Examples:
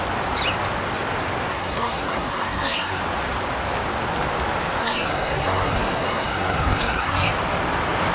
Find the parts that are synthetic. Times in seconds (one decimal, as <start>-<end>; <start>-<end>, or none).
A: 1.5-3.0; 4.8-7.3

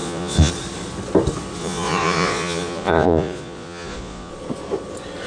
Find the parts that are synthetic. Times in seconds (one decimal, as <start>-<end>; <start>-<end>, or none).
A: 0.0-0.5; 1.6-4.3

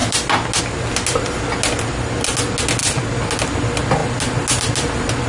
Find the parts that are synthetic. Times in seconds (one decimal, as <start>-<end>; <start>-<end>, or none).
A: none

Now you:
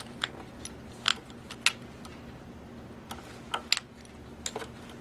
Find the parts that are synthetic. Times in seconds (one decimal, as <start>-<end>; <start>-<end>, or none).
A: none